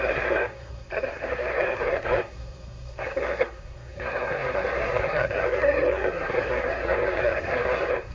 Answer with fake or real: fake